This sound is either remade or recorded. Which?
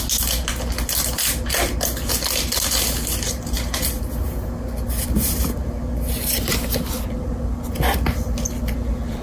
recorded